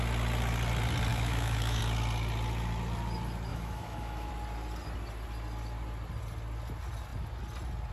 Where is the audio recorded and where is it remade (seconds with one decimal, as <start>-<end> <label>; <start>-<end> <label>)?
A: 0.0-1.1 recorded; 1.1-1.8 remade; 1.8-3.5 recorded; 3.5-4.3 remade; 4.3-7.9 recorded